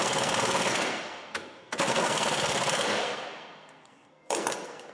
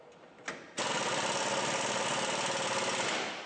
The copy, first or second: first